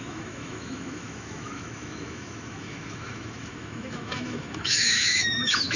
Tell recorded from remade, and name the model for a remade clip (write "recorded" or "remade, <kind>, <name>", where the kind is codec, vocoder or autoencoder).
remade, autoencoder, DAC-VAE